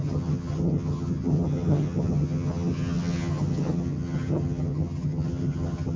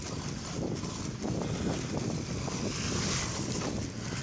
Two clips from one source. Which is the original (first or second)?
second